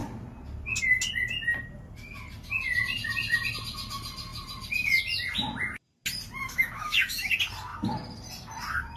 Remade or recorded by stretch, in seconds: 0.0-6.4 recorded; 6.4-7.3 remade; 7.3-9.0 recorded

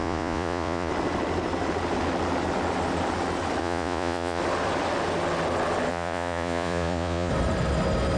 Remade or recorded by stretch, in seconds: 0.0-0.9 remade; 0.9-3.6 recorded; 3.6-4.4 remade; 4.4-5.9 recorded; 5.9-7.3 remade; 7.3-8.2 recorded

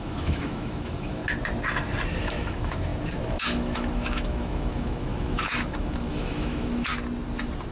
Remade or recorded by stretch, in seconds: 0.0-1.2 remade; 1.2-2.2 recorded; 2.2-6.9 remade; 6.9-7.7 recorded

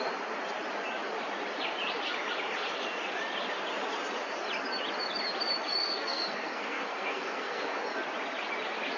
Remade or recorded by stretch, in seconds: 0.0-5.8 recorded; 5.8-7.8 remade; 7.8-9.0 recorded

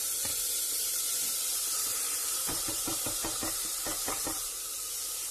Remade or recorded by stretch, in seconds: 0.0-5.3 remade